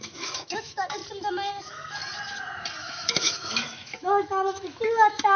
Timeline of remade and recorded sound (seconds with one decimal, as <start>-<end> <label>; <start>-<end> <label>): 0.0-1.0 remade; 1.0-1.6 recorded; 1.6-2.0 remade; 2.0-2.8 recorded; 2.8-5.4 remade